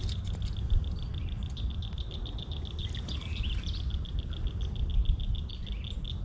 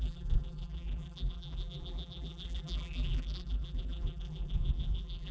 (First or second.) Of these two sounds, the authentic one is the first